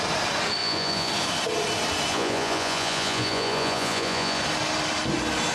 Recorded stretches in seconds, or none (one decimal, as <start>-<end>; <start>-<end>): 0.0-0.6; 1.1-2.1; 4.4-5.5